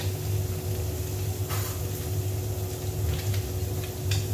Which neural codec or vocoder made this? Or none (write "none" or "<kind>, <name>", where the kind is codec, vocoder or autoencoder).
none